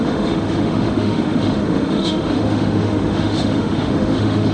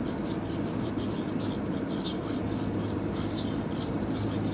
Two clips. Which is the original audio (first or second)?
second